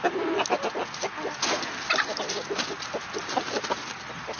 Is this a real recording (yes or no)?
yes